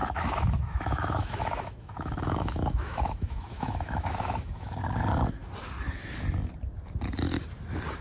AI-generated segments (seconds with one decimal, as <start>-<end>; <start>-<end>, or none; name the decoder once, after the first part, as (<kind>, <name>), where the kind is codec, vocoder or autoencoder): 0.0-4.8 (autoencoder, DAC-VAE)